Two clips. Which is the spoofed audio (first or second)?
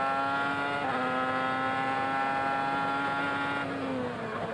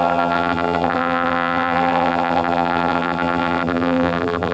second